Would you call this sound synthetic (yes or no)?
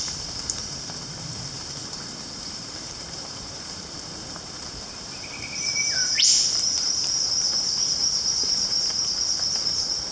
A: yes